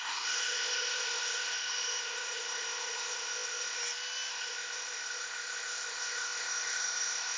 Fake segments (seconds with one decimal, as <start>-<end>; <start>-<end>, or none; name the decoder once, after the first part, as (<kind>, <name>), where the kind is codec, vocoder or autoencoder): 0.0-3.8 (codec, ZipCodec); 4.3-7.4

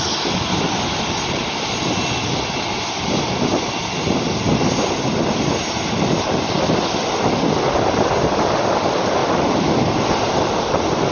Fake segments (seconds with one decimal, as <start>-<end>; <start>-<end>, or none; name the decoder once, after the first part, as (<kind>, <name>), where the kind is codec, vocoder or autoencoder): none

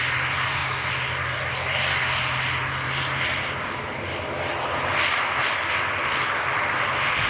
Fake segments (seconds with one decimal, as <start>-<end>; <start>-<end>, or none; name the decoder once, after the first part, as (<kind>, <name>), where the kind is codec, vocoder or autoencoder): none